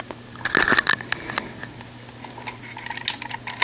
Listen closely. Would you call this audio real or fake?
real